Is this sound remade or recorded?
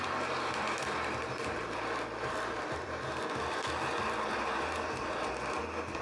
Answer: remade